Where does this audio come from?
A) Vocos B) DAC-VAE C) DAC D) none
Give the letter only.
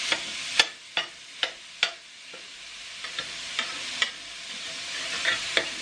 D